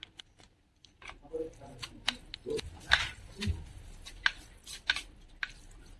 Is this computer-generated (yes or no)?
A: no